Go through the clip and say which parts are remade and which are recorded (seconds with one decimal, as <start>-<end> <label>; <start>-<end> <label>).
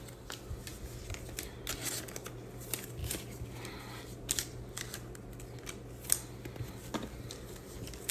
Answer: 0.0-8.1 recorded